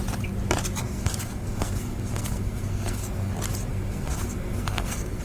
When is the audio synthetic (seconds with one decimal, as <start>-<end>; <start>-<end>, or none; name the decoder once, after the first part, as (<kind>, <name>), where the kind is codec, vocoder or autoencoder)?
0.8-3.3 (codec, SNAC); 3.7-5.2